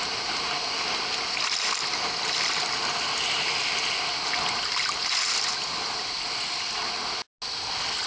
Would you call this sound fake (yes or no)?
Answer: no